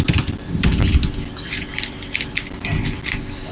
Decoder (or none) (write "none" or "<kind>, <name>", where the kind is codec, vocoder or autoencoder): vocoder, BigVGAN v2